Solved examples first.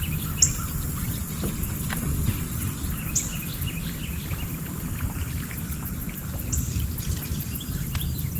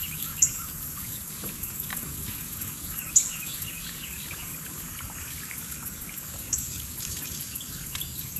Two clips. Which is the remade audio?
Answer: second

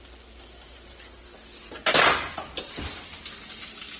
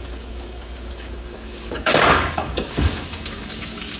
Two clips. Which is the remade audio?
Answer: second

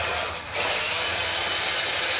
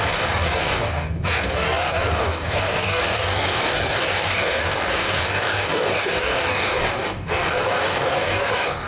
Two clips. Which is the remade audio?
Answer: second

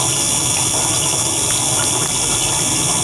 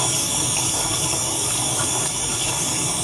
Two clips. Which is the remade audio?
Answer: second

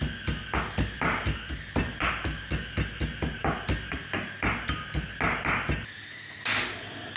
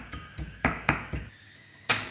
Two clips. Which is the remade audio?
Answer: second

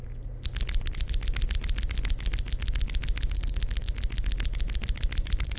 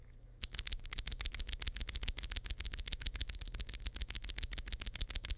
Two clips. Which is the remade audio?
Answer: second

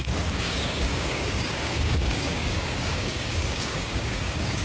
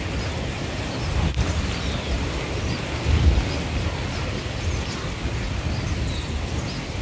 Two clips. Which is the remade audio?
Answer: first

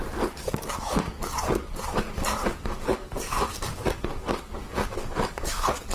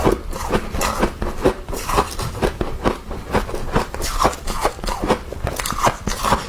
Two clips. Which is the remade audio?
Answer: first